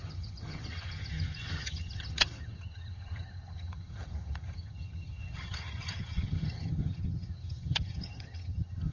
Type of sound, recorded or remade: remade